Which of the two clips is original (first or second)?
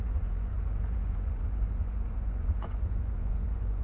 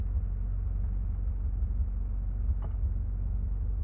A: second